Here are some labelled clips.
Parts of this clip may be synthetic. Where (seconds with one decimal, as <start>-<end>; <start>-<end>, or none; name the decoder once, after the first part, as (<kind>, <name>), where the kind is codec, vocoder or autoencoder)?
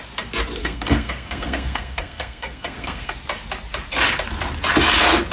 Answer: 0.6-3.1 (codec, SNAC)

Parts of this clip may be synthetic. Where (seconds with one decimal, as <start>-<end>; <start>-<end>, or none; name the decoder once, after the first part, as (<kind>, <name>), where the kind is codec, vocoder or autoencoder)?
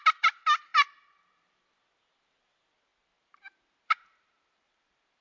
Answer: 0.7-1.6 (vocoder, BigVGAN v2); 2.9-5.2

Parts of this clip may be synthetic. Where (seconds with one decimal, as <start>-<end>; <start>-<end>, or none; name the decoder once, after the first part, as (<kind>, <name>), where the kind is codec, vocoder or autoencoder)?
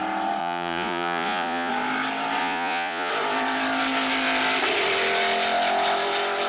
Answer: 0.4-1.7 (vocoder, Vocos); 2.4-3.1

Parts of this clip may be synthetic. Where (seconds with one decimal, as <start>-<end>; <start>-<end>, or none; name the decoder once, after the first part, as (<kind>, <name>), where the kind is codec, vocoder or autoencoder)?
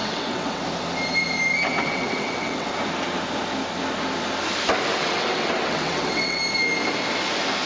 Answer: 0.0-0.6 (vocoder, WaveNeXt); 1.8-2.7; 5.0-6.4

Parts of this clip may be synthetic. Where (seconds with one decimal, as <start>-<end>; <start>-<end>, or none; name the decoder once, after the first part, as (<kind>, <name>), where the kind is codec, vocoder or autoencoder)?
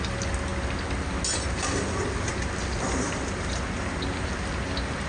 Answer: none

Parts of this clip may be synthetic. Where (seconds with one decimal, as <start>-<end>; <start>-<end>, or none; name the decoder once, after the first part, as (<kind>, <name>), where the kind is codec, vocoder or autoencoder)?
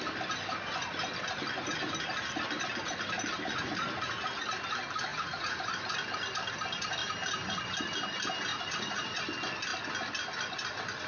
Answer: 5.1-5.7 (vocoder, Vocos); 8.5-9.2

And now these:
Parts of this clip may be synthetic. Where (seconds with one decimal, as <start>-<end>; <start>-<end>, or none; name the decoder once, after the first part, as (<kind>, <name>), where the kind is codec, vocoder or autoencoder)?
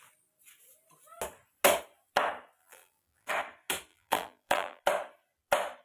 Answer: 2.6-3.3 (vocoder, BigVGAN v2); 3.9-4.8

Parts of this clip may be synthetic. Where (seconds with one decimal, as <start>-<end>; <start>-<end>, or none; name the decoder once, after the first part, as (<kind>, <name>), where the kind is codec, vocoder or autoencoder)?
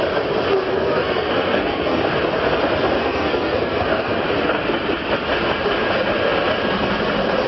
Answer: 0.7-2.0 (codec, SNAC); 3.0-4.1